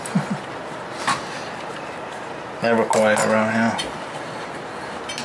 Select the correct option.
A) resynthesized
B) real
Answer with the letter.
B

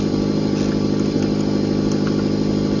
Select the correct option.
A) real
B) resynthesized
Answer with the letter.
A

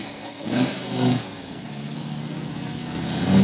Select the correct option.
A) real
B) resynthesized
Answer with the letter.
B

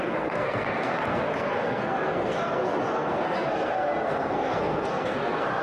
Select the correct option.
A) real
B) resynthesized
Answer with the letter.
B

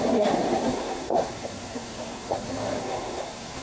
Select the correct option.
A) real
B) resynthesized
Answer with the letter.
B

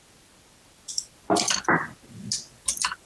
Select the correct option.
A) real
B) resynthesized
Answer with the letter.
A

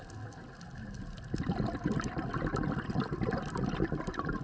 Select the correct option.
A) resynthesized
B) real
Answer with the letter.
B